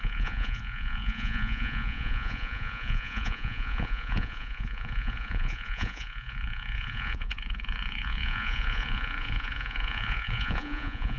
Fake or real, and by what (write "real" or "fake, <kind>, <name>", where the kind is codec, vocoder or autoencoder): fake, vocoder, Vocos